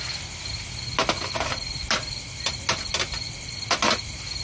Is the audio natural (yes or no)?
yes